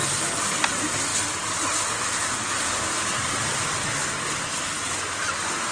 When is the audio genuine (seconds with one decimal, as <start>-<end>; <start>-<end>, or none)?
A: 0.0-5.7